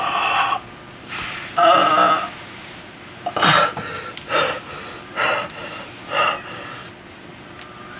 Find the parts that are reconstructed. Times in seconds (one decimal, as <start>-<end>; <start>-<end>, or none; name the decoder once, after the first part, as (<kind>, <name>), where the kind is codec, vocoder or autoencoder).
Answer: none